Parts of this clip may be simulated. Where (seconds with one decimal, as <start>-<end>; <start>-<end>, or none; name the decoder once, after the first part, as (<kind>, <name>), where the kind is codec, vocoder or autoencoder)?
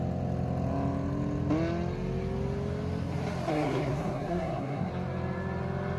3.5-4.9 (codec, SNAC)